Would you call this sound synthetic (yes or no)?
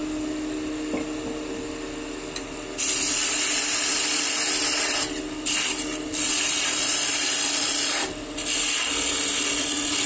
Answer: no